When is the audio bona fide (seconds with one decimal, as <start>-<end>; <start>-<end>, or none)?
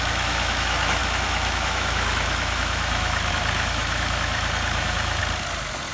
5.2-5.9